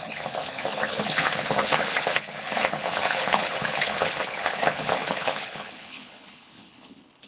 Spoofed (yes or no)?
yes